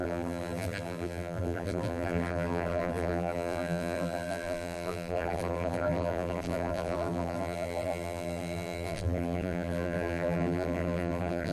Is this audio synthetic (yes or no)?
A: yes